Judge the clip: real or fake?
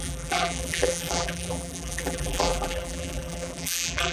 fake